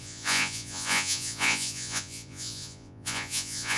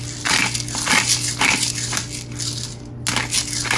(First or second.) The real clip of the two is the second